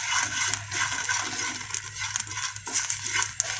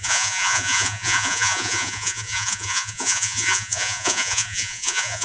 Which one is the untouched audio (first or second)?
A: first